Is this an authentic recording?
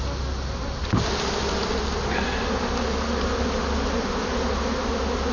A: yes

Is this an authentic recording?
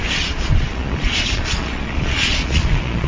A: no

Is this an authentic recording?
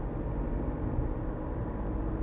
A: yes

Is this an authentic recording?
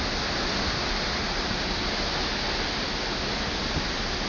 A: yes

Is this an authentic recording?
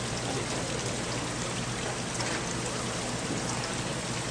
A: yes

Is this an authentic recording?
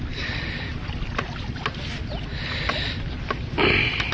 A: yes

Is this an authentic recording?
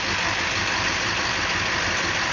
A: no